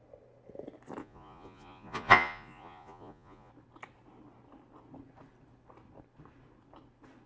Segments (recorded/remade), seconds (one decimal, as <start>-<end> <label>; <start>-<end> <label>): 0.0-1.0 recorded; 1.0-3.5 remade; 3.5-7.3 recorded